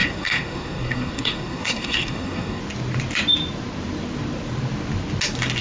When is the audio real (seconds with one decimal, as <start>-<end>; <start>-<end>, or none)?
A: 2.6-5.6